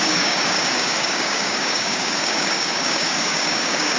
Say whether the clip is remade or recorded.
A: remade